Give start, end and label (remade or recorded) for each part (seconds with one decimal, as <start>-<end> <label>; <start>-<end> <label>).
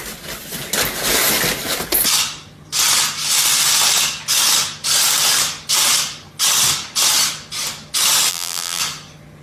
0.0-8.3 recorded; 8.3-8.8 remade; 8.8-9.4 recorded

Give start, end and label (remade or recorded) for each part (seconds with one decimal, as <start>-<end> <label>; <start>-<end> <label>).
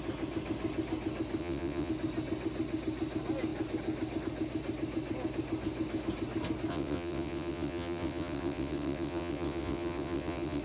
0.0-1.4 recorded; 1.4-1.9 remade; 1.9-6.7 recorded; 6.7-10.6 remade